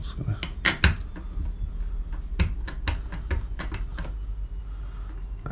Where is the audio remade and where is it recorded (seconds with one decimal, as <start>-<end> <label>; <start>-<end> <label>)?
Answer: 0.0-5.5 recorded